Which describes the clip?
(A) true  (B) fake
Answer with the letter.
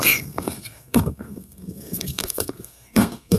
B